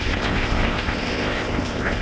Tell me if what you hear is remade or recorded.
remade